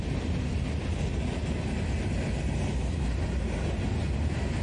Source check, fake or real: real